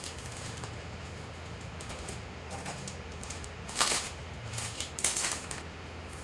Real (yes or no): no